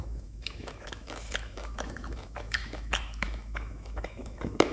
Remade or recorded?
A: remade